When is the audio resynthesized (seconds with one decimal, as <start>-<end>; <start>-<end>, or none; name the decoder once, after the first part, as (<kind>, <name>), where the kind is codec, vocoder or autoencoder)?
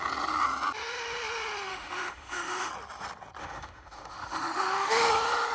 1.7-2.7 (autoencoder, DAC-VAE); 3.4-5.1